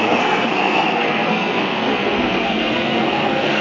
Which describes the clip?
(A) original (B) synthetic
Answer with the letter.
B